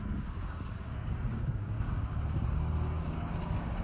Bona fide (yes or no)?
no